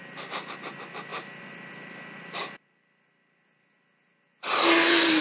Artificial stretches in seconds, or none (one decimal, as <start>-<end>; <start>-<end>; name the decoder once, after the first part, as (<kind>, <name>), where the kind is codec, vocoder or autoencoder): none